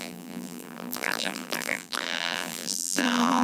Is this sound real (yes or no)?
no